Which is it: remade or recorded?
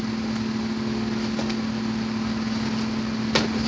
recorded